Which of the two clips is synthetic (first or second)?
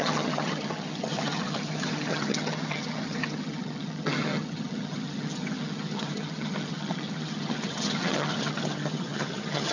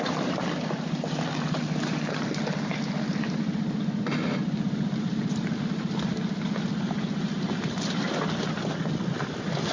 first